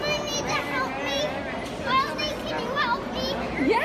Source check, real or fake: real